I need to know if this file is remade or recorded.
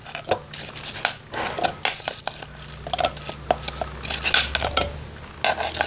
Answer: recorded